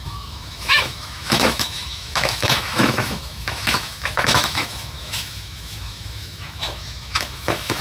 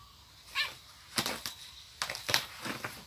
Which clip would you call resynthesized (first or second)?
first